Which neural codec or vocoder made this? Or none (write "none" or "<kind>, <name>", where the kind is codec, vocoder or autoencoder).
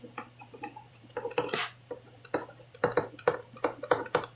vocoder, BigVGAN v2